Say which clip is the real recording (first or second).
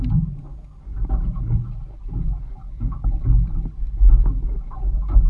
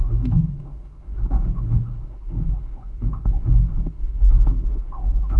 first